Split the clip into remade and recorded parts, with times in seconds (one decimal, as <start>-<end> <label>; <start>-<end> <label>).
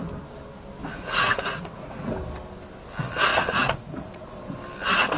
0.0-0.8 recorded; 0.8-2.1 remade; 2.1-3.3 recorded; 3.3-4.4 remade; 4.4-5.2 recorded